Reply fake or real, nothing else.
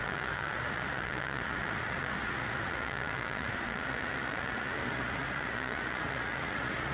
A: fake